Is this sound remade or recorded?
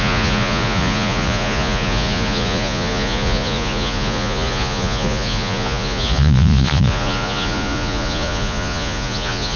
remade